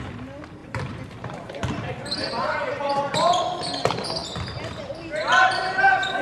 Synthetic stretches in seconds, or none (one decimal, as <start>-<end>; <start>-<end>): 0.6-3.0

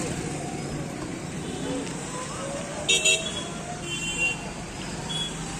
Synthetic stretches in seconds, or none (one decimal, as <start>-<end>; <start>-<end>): 1.1-1.6

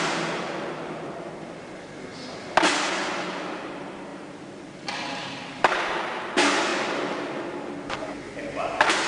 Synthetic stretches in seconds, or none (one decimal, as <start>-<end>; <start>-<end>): 4.1-6.3

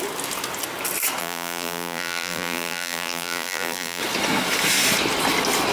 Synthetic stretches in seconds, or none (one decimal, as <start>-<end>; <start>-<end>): 1.2-4.0

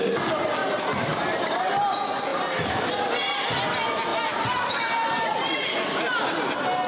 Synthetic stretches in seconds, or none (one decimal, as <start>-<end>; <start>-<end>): 0.6-1.1; 2.3-3.4; 4.1-5.5

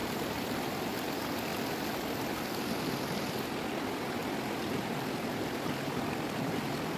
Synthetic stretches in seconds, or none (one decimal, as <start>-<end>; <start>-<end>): 0.0-1.5; 2.4-7.0

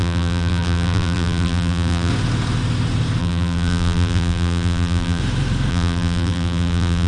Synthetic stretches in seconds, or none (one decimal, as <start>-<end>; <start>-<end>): 0.0-2.1; 3.2-5.2; 5.7-7.1

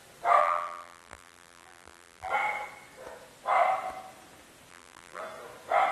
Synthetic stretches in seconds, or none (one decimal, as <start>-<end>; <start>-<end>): 0.4-2.3; 4.7-5.2